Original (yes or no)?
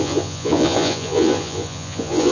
no